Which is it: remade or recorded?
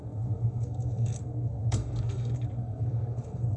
remade